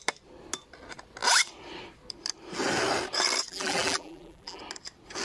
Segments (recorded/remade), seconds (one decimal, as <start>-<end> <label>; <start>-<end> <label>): 0.0-3.5 recorded; 3.5-4.6 remade; 4.6-5.2 recorded